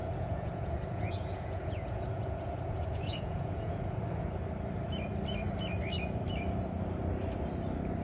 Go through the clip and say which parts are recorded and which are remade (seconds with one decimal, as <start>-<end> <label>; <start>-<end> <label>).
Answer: 0.0-4.0 remade; 4.0-8.0 recorded